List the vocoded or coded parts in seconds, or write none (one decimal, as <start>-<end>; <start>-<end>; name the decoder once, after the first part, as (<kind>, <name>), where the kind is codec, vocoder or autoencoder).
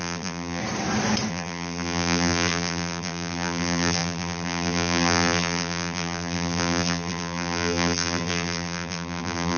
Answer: 0.0-0.6 (vocoder, BigVGAN v2); 1.3-9.6